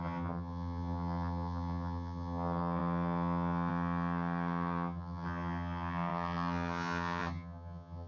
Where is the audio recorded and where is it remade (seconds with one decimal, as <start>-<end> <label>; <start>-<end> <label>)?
0.0-8.1 remade